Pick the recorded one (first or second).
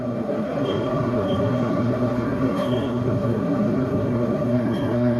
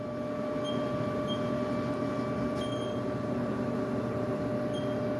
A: second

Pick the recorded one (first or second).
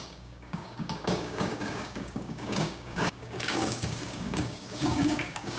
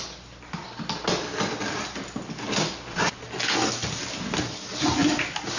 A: second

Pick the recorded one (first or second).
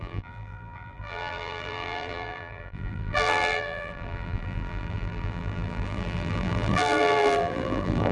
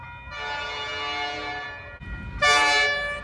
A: second